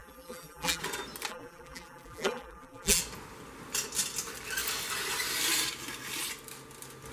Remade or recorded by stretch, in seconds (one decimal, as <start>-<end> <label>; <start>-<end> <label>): 0.0-0.8 remade; 0.8-1.3 recorded; 1.3-3.0 remade; 3.0-7.1 recorded